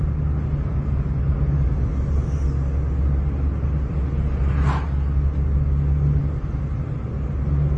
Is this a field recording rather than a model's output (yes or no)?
yes